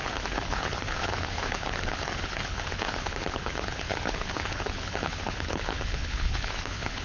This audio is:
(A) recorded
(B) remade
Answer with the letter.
B